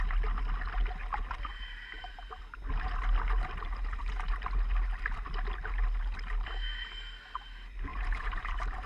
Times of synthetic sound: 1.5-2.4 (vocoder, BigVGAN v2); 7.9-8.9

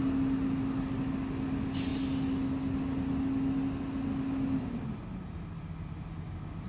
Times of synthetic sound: none

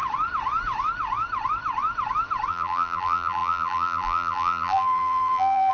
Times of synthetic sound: 2.5-5.7 (vocoder, BigVGAN v2)

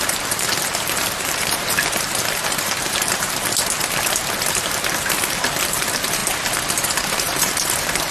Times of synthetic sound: 0.0-6.2 (vocoder, BigVGAN v2); 7.1-8.1